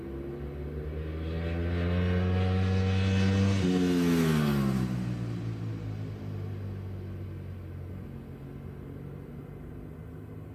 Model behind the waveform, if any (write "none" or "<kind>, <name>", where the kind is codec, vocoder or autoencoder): none